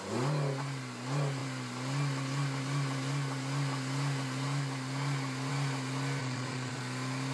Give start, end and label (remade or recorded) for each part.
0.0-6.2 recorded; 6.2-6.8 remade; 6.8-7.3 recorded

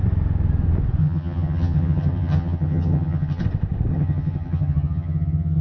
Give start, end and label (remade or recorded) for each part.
0.0-1.0 recorded; 1.0-3.4 remade; 3.4-3.9 recorded; 3.9-5.6 remade

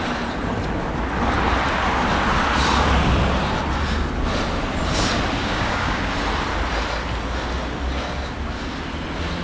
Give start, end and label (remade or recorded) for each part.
0.0-5.4 recorded; 5.4-6.0 remade; 6.0-9.4 recorded